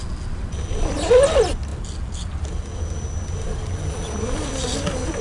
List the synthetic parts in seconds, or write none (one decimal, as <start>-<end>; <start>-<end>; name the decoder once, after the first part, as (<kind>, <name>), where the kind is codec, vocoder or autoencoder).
none